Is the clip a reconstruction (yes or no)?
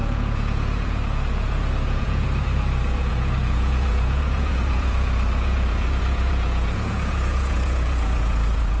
yes